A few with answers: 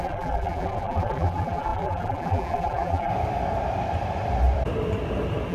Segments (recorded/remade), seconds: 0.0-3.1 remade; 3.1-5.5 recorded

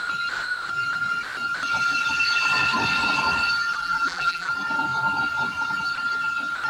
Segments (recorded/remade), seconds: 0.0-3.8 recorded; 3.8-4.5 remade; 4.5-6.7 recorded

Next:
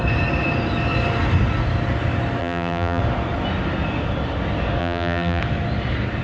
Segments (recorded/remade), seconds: 0.0-2.4 recorded; 2.4-3.0 remade; 3.0-4.8 recorded; 4.8-5.4 remade; 5.4-6.2 recorded

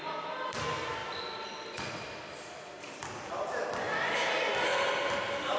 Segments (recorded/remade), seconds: 0.0-1.0 recorded; 1.0-2.9 remade; 2.9-5.6 recorded

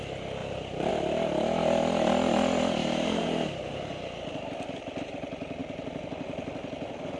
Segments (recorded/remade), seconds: 0.0-0.4 recorded; 0.4-0.9 remade; 0.9-2.8 recorded; 2.8-3.7 remade; 3.7-7.2 recorded

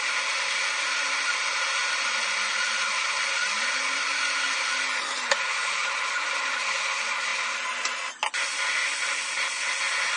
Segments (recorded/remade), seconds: 0.0-10.2 recorded

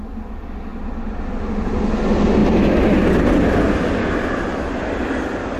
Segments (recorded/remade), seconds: 0.0-0.7 recorded; 0.7-1.4 remade; 1.4-5.6 recorded

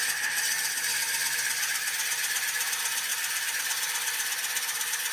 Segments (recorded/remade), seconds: 0.0-3.1 recorded; 3.1-3.6 remade; 3.6-5.1 recorded